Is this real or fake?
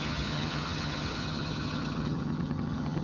fake